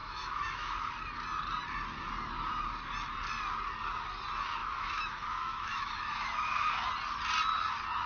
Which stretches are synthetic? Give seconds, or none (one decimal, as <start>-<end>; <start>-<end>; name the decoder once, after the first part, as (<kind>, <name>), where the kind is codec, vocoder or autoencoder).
0.0-0.9 (autoencoder, DAC-VAE); 4.6-6.9